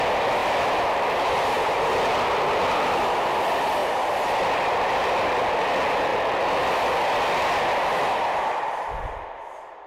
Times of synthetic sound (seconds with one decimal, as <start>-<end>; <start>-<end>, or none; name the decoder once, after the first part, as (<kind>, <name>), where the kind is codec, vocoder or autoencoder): 0.4-1.8 (vocoder, BigVGAN v2)